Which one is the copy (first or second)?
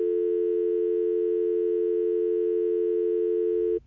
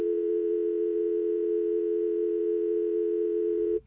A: second